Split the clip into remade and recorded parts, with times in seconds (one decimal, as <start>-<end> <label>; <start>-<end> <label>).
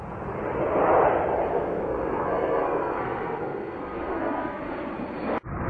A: 0.0-1.5 recorded; 1.5-4.6 remade; 4.6-5.7 recorded